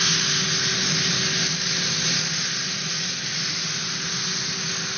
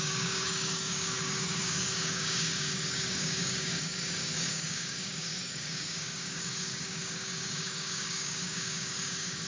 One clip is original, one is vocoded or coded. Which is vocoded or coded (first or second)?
second